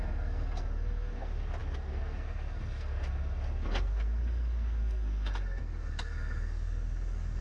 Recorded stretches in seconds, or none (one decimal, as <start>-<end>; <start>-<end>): none